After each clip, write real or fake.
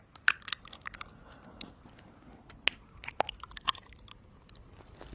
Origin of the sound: real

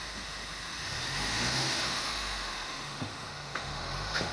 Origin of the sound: fake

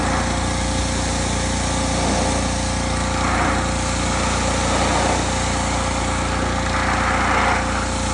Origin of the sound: real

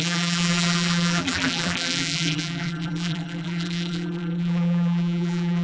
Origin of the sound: fake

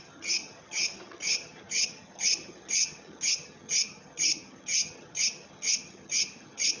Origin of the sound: fake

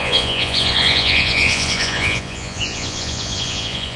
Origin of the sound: fake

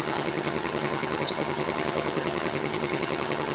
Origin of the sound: fake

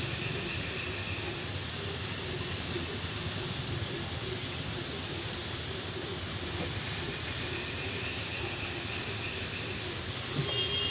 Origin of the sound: real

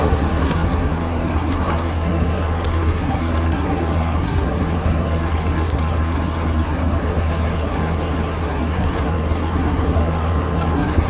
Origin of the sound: fake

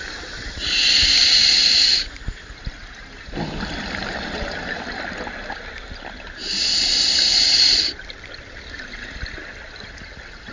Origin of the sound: real